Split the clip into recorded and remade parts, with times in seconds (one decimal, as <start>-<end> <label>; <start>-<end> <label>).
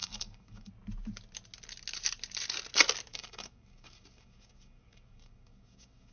0.0-0.7 remade; 0.7-3.1 recorded; 3.1-6.1 remade